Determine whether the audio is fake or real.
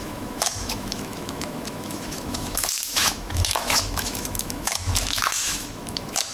fake